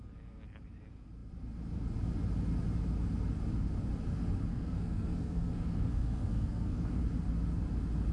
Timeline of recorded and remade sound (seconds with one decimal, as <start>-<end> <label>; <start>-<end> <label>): 0.0-4.5 recorded; 4.5-7.0 remade; 7.0-8.1 recorded